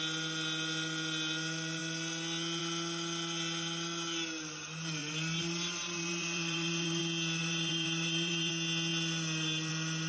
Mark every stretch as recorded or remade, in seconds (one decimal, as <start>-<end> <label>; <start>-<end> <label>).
0.0-5.0 recorded; 5.0-7.0 remade; 7.0-7.4 recorded; 7.4-8.5 remade; 8.5-10.1 recorded